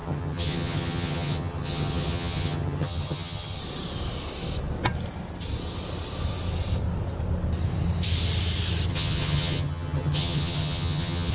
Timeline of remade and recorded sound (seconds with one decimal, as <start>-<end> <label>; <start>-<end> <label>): 0.0-3.6 remade; 3.6-8.9 recorded; 8.9-11.3 remade